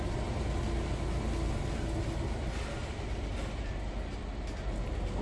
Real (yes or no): yes